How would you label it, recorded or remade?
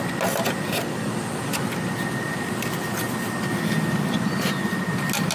recorded